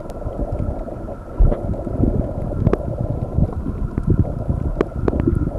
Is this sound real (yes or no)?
yes